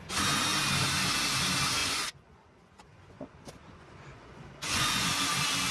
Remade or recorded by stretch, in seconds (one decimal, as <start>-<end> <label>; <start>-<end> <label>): 0.0-1.8 recorded; 1.8-5.2 remade; 5.2-5.7 recorded